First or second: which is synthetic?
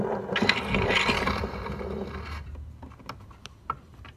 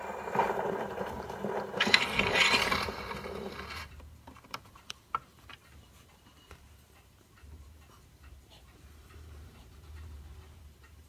second